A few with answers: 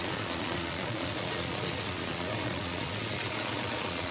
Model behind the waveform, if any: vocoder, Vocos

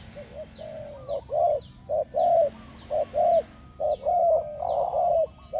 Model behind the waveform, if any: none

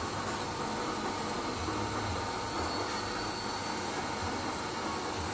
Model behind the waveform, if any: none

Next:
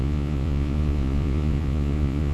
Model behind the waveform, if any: vocoder, Vocos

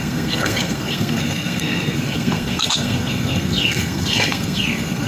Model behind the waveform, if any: codec, SNAC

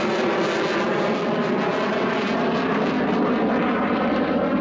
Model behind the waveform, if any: none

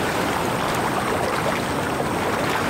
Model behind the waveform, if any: none